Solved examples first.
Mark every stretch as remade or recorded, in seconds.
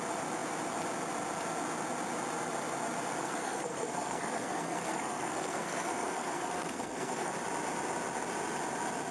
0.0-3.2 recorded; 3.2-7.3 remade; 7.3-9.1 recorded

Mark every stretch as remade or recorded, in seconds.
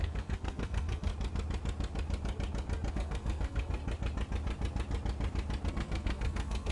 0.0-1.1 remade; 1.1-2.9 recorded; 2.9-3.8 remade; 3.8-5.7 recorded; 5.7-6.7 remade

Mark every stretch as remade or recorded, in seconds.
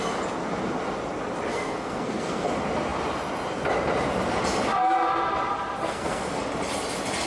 0.0-1.5 recorded; 1.5-2.5 remade; 2.5-5.8 recorded; 5.8-6.4 remade; 6.4-7.3 recorded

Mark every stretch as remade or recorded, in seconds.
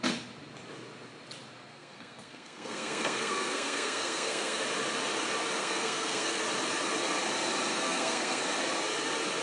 0.0-1.7 recorded; 1.7-4.6 remade; 4.6-5.6 recorded; 5.6-6.4 remade; 6.4-7.7 recorded; 7.7-8.4 remade; 8.4-9.4 recorded